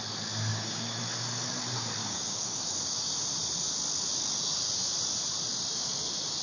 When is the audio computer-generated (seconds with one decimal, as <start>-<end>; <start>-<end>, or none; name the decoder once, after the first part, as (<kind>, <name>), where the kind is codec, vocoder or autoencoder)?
0.5-1.0 (codec, DAC); 2.0-2.8